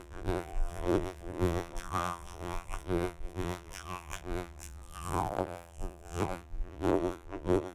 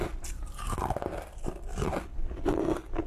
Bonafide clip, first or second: second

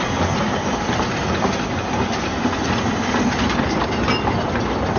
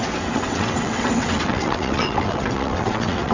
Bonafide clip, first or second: first